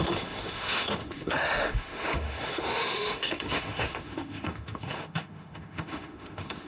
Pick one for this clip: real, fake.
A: fake